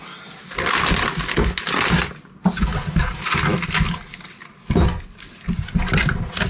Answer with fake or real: real